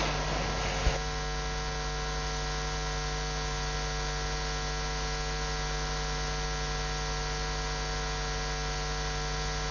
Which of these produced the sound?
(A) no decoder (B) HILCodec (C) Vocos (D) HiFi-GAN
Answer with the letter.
A